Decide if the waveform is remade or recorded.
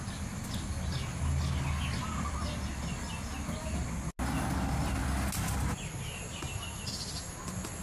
recorded